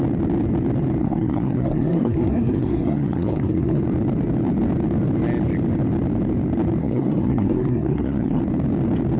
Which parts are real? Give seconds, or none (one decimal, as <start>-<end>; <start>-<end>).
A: 0.0-1.0; 3.8-6.8; 8.4-9.2